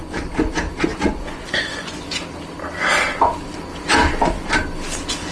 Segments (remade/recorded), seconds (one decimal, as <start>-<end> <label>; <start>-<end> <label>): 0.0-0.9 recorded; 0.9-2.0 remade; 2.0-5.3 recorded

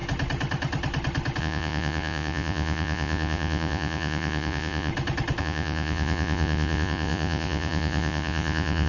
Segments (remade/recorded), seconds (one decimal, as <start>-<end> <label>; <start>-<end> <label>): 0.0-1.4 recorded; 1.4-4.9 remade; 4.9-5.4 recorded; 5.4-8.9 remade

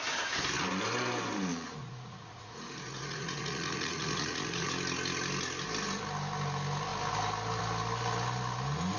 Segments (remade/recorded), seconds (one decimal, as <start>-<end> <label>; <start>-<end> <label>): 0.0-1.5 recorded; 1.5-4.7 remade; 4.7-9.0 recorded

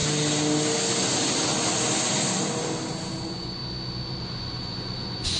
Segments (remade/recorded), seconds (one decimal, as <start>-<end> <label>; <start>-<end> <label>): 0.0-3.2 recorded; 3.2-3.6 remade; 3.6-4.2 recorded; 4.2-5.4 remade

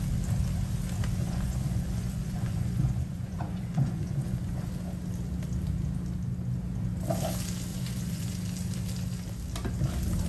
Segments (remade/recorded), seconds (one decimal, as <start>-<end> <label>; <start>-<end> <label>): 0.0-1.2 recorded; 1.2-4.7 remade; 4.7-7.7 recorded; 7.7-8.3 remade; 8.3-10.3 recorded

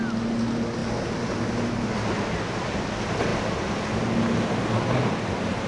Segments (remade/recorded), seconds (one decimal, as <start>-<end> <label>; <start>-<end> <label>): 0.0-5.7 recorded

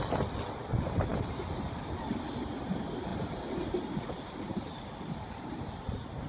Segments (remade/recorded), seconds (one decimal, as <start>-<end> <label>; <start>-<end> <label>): 0.0-6.3 recorded